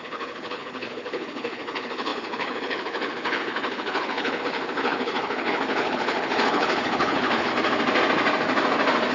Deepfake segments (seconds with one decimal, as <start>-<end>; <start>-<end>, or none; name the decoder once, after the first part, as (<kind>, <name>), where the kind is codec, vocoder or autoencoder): 0.0-7.5 (codec, HILCodec)